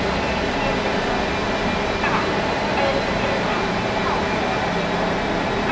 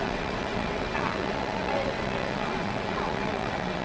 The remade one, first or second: second